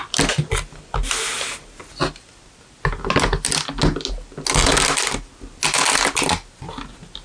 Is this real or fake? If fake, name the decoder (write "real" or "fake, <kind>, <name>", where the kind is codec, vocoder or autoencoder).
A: real